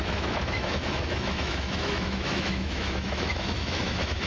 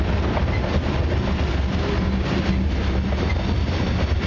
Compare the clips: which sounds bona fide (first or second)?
second